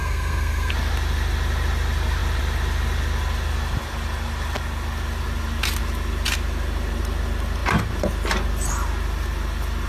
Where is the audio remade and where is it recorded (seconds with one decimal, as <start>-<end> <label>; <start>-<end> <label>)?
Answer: 0.0-0.7 remade; 0.7-9.9 recorded

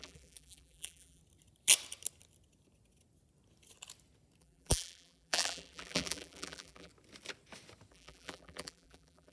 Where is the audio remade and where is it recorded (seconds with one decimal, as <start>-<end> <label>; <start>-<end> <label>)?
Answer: 0.0-1.2 remade; 1.2-4.4 recorded; 4.4-6.9 remade; 6.9-7.9 recorded; 7.9-9.3 remade